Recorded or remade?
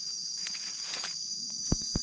remade